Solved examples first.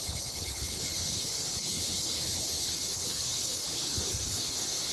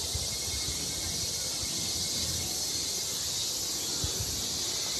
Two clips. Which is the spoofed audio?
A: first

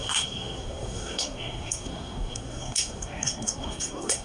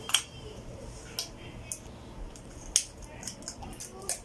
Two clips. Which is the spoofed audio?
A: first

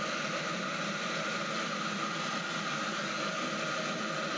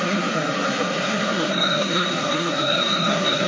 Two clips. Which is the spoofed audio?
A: second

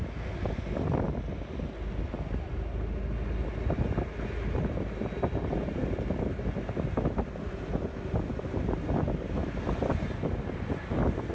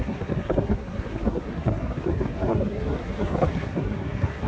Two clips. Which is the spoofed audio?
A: second